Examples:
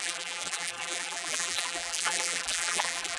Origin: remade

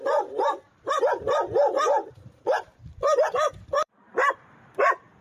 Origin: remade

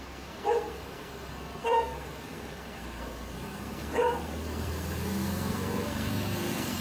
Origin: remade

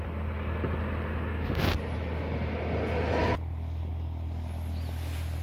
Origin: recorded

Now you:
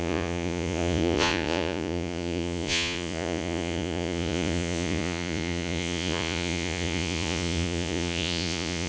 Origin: remade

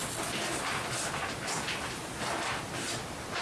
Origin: recorded